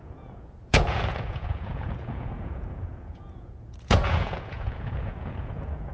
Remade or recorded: remade